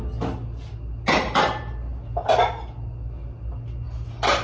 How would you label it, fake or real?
real